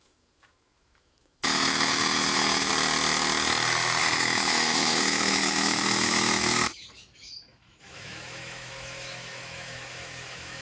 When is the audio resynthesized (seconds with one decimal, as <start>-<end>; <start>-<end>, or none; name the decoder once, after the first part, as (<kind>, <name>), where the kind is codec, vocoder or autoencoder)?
0.0-2.7 (autoencoder, DAC-VAE); 4.0-10.6